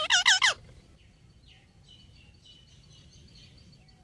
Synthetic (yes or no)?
no